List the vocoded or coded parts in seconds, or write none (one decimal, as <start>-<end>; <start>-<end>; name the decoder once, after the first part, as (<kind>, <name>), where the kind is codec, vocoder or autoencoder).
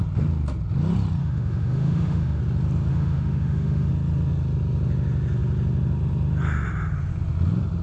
1.2-2.4 (autoencoder, DAC-VAE); 2.9-3.9